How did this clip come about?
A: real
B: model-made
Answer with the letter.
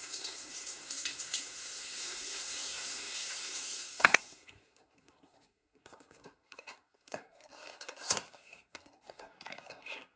B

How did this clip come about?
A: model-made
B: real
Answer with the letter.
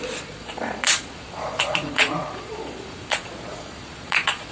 A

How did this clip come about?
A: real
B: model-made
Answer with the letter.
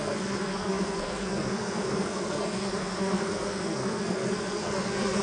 B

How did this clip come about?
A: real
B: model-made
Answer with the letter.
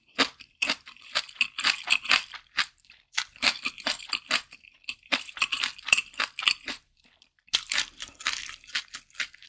B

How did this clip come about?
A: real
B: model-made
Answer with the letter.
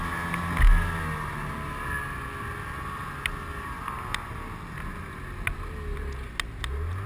A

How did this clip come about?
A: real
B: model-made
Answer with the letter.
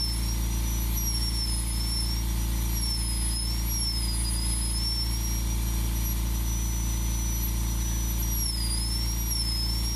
A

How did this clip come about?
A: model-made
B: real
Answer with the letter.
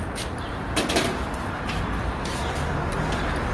B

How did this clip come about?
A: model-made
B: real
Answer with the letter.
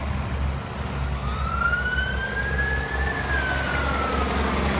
B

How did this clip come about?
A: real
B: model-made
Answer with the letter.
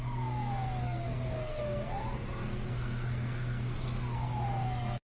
B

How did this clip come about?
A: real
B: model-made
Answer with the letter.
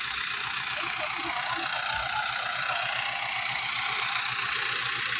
A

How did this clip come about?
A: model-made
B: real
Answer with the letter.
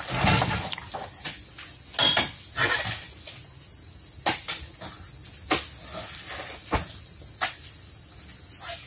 B